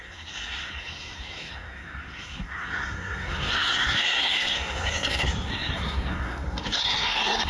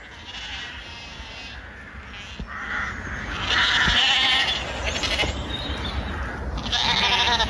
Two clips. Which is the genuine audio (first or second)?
second